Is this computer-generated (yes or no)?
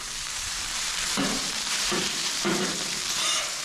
yes